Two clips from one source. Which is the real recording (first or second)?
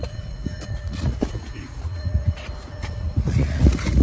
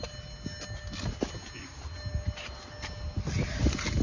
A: second